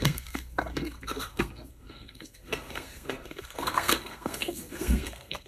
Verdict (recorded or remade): remade